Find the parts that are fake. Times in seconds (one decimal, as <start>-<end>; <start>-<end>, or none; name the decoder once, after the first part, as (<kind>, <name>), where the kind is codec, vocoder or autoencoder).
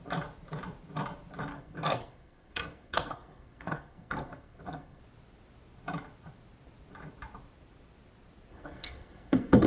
1.5-5.0 (codec, SNAC); 8.5-9.7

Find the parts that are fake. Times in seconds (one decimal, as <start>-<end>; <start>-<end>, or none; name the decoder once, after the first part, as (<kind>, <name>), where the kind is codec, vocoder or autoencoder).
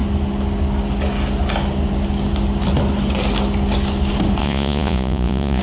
4.4-5.6 (vocoder, Vocos)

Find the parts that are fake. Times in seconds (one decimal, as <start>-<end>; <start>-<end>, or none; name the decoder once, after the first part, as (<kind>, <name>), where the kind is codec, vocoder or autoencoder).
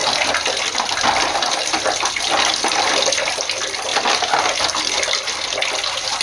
none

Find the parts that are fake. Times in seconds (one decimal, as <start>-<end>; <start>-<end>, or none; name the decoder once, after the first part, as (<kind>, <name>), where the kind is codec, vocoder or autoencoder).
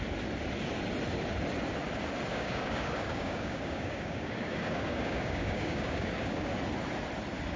2.3-6.5 (codec, DAC)